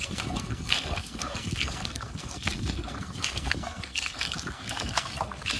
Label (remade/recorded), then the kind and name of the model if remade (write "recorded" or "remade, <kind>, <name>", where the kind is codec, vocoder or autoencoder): remade, codec, SNAC